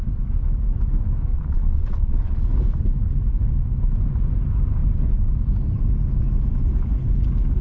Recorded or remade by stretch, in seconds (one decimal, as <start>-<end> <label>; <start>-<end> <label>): 0.0-1.3 recorded; 1.3-2.3 remade; 2.3-7.6 recorded

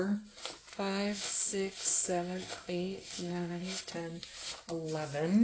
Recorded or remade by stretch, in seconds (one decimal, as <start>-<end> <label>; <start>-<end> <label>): 0.0-0.7 recorded; 0.7-3.9 remade; 3.9-5.4 recorded

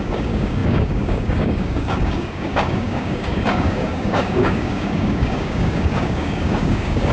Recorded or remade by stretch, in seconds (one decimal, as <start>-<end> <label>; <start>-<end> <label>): 0.0-7.1 remade

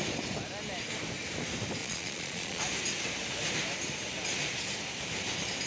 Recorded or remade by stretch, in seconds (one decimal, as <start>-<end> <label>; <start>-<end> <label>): 0.0-1.8 recorded; 1.8-2.6 remade; 2.6-5.7 recorded

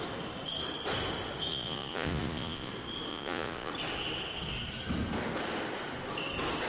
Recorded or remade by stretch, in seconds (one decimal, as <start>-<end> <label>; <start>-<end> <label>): 0.0-1.5 recorded; 1.5-2.7 remade; 2.7-3.1 recorded; 3.1-3.7 remade; 3.7-6.7 recorded